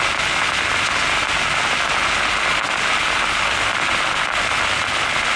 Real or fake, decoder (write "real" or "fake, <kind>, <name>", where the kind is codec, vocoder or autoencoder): real